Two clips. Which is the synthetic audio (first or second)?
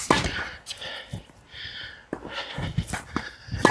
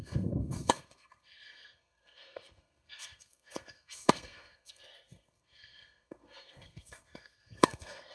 second